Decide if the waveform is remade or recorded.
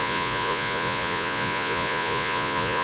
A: remade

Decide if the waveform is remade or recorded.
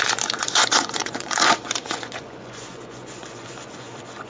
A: remade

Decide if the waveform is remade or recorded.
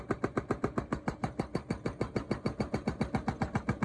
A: recorded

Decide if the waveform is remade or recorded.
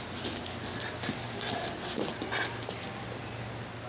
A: recorded